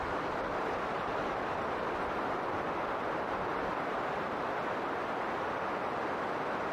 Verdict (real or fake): real